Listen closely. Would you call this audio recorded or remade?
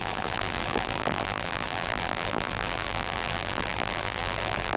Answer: remade